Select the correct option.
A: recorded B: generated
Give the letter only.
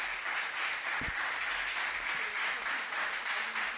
A